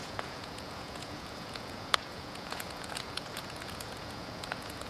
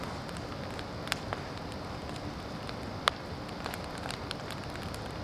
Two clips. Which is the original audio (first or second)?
second